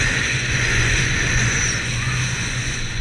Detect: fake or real fake